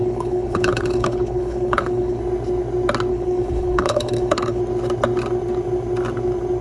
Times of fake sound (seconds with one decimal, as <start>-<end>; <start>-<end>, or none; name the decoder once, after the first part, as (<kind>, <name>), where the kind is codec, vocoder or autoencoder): 0.0-2.2 (codec, HILCodec); 3.1-4.6